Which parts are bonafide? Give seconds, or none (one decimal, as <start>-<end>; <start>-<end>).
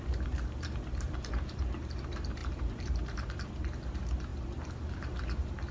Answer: none